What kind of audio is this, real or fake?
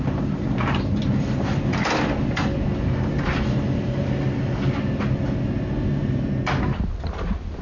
real